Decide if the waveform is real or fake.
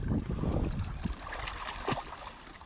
real